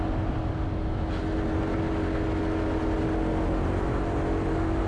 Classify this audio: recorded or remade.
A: recorded